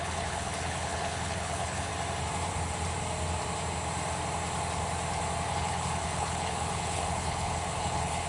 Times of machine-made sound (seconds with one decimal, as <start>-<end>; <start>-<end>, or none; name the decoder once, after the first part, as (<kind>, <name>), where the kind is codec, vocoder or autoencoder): 0.0-1.9 (codec, HILCodec); 5.5-8.3